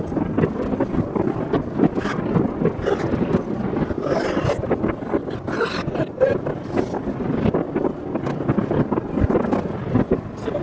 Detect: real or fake real